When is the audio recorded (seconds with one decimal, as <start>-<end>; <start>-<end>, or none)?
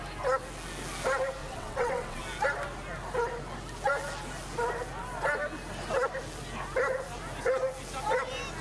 0.0-1.4; 2.2-8.6